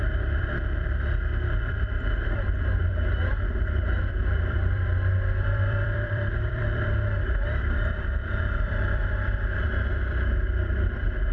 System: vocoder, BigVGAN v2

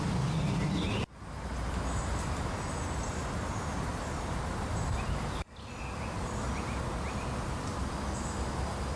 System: none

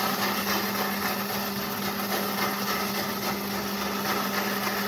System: none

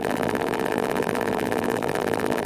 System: vocoder, BigVGAN v2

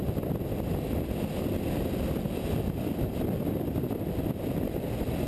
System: vocoder, BigVGAN v2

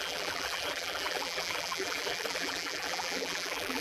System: vocoder, BigVGAN v2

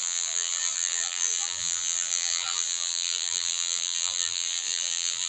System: vocoder, BigVGAN v2